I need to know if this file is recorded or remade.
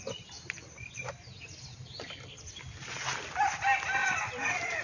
recorded